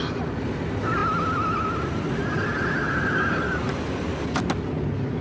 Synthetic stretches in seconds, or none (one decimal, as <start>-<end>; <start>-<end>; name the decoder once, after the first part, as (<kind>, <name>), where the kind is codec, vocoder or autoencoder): none